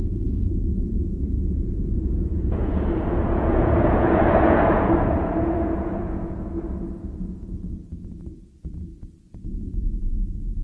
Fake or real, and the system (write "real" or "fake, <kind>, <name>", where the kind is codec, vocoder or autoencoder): fake, vocoder, Vocos